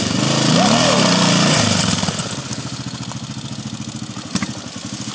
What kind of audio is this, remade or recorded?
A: recorded